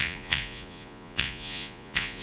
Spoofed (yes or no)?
yes